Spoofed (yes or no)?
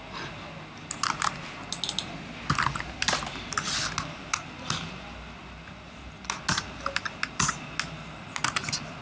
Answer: no